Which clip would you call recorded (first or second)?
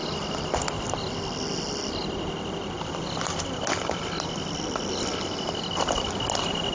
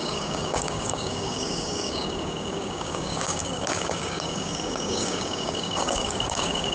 first